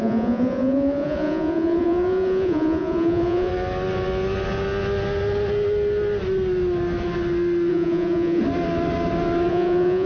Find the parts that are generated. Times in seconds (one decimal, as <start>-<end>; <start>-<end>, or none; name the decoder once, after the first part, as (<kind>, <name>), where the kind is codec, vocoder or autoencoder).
0.0-3.5 (vocoder, Vocos); 7.7-8.4; 9.5-10.1